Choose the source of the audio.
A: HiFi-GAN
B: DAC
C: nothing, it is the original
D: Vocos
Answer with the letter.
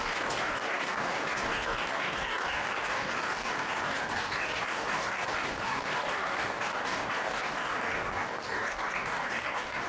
B